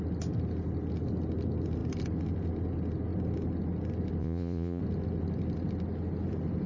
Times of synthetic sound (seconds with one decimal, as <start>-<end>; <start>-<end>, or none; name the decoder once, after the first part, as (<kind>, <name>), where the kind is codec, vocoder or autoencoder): 4.2-4.8 (vocoder, Vocos)